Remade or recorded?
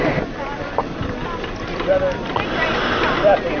recorded